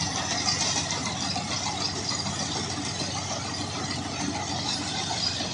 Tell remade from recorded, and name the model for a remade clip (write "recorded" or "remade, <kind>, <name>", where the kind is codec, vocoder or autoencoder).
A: recorded